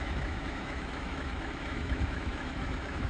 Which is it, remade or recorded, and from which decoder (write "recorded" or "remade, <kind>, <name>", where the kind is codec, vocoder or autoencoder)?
remade, autoencoder, DAC-VAE